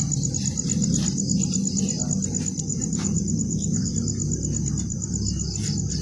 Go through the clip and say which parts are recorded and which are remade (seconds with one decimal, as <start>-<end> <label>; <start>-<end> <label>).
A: 0.0-2.7 recorded; 2.7-3.9 remade; 3.9-6.0 recorded